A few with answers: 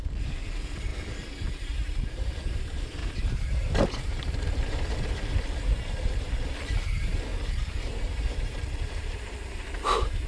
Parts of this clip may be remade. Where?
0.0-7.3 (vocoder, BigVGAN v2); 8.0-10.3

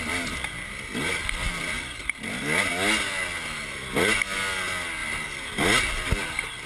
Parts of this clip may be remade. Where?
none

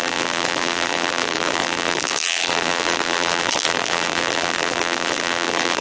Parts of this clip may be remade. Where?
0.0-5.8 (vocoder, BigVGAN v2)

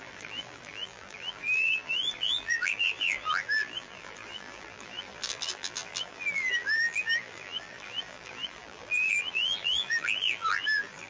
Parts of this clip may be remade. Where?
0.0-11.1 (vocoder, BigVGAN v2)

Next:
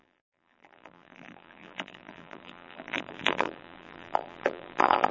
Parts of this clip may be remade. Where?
0.0-5.1 (vocoder, BigVGAN v2)

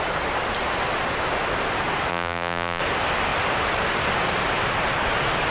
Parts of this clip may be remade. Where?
2.1-2.8 (vocoder, BigVGAN v2)

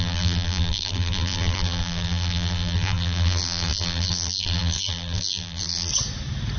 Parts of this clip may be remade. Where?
0.0-5.9 (vocoder, BigVGAN v2)